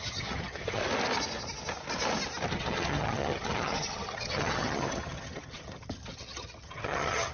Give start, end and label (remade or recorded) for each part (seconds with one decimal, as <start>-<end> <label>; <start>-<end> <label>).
0.0-0.8 remade; 0.8-2.5 recorded; 2.5-7.3 remade